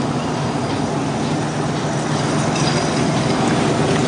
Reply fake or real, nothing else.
real